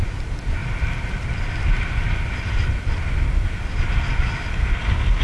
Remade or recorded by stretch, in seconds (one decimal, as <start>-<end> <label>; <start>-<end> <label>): 0.0-5.2 recorded